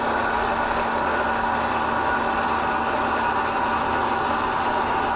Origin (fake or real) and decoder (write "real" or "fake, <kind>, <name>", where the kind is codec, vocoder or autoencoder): real